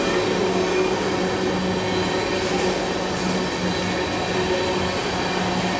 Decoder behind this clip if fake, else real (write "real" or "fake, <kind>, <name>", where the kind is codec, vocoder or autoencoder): real